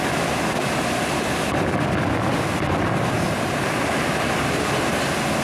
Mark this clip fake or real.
real